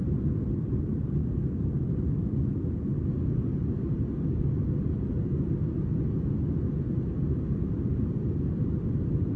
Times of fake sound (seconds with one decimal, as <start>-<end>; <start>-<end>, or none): 0.0-1.2; 1.9-2.9; 7.9-9.4